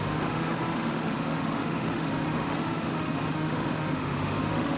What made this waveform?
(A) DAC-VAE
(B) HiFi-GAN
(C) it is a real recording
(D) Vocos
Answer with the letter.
A